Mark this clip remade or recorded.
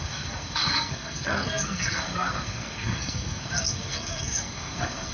remade